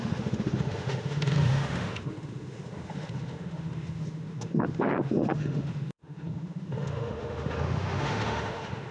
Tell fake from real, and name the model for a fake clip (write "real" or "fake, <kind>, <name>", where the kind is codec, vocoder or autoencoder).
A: fake, autoencoder, DAC-VAE